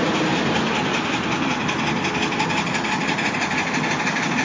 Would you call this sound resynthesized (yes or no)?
no